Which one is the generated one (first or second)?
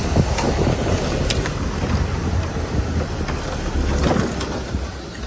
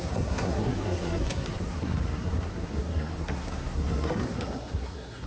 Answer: second